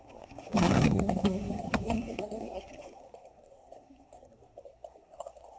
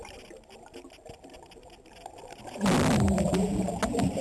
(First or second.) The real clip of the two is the second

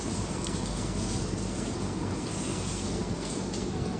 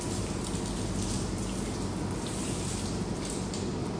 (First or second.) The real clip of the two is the second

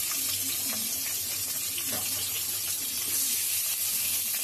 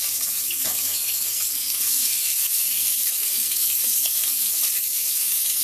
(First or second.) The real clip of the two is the first